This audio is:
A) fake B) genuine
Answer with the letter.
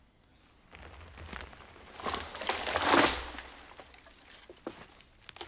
B